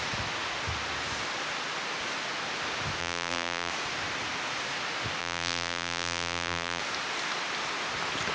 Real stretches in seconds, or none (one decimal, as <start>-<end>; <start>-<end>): 0.0-3.0; 3.7-5.2; 6.8-8.3